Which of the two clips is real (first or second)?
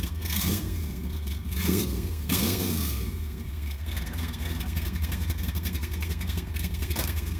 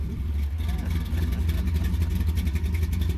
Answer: second